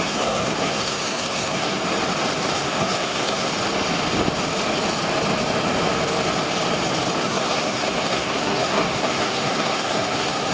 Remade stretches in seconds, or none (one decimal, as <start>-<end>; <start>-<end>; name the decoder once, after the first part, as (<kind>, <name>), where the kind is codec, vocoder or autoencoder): 0.0-1.8 (codec, SNAC); 2.5-3.5; 7.2-10.5